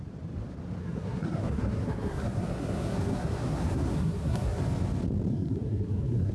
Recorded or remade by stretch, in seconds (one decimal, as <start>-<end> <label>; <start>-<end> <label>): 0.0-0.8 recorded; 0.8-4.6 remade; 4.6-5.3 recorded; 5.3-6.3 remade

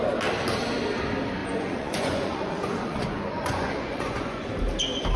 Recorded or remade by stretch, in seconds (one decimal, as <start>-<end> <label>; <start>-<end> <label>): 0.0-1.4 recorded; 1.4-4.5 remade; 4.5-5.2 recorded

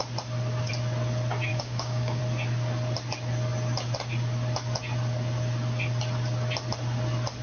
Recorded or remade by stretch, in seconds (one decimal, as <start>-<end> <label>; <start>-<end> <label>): 0.0-1.5 recorded; 1.5-2.2 remade; 2.2-7.4 recorded

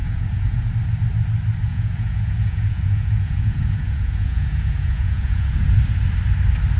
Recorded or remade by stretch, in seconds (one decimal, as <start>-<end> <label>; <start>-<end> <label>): 0.0-0.7 remade; 0.7-1.7 recorded; 1.7-5.8 remade; 5.8-6.8 recorded